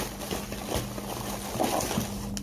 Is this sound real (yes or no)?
yes